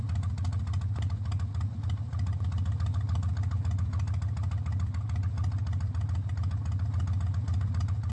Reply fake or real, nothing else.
real